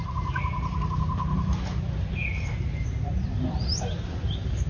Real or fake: real